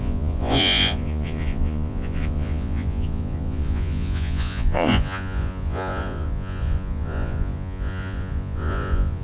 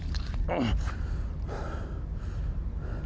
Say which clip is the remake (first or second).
first